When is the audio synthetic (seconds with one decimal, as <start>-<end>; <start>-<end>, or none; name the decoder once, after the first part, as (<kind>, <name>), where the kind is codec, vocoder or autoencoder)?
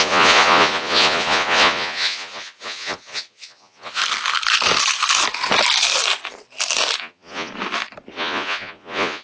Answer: 0.0-4.0 (vocoder, Vocos); 7.0-7.5; 8.1-9.2